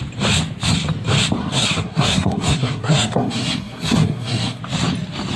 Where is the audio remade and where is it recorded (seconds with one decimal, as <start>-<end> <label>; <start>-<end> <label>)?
0.0-1.4 recorded; 1.4-4.6 remade; 4.6-5.4 recorded